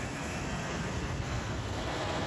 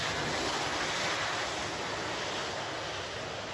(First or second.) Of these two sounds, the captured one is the second